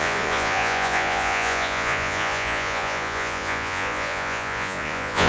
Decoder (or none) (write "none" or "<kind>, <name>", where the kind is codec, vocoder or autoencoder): vocoder, Vocos